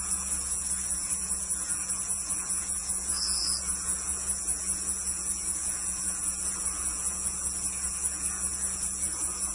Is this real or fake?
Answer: fake